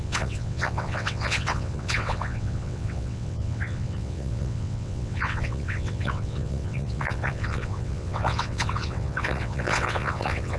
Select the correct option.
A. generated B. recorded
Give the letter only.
A